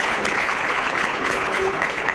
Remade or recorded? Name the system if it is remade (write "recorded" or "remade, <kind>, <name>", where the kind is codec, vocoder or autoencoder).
remade, codec, HILCodec